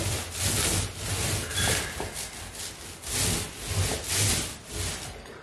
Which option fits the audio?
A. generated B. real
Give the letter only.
B